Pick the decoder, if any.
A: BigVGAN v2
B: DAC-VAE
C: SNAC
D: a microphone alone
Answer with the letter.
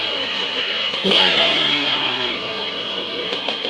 C